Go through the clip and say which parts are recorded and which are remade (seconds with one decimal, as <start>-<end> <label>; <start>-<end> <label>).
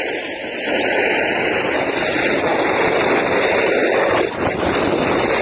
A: 0.0-5.4 recorded